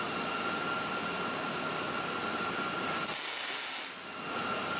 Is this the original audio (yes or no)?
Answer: yes